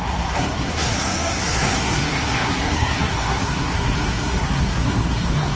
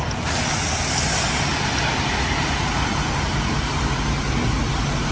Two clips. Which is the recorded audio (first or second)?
second